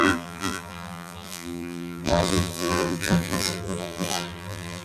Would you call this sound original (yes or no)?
no